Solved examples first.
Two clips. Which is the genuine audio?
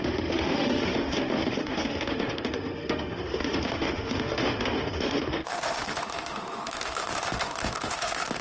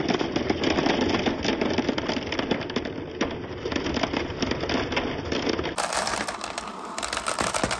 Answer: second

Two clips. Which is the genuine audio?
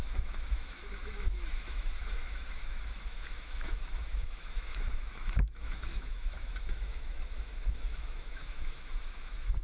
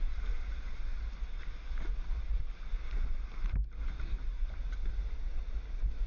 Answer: second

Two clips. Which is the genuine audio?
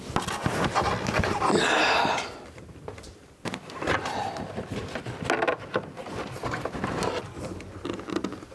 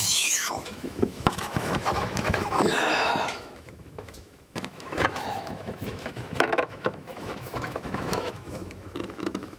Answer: first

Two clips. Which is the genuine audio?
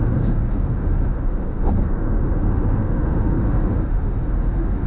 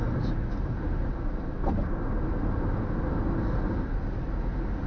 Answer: second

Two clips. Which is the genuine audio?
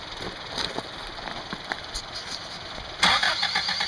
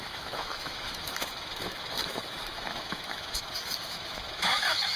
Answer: first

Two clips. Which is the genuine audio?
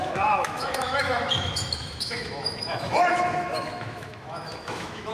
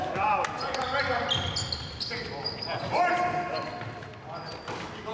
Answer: second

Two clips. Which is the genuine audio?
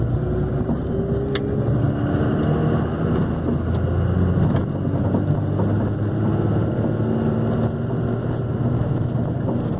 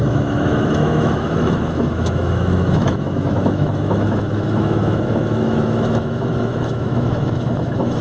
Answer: first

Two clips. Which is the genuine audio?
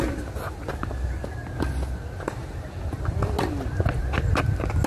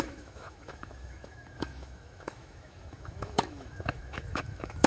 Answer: first